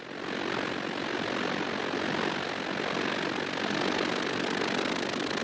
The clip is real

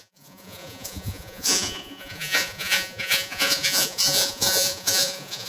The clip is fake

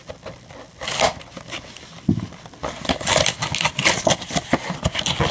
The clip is real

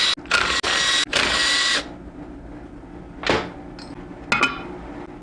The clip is real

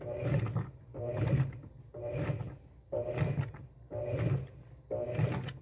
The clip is real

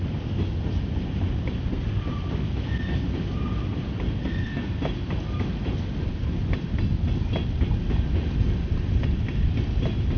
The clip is real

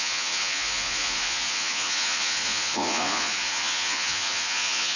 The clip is fake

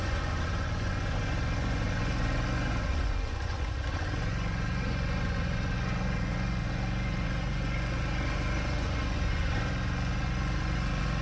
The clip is fake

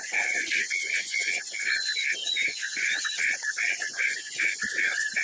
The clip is fake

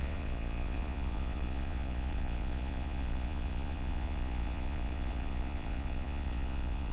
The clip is fake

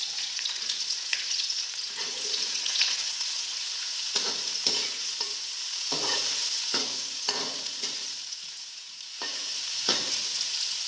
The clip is fake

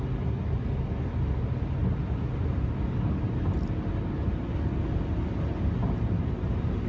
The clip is real